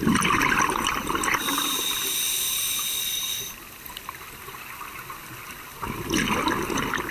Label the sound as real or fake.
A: real